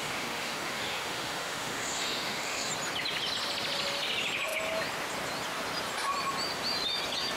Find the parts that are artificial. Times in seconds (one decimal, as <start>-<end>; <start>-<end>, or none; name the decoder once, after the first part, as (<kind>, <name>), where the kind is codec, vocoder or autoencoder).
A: 0.0-2.7 (autoencoder, DAC-VAE)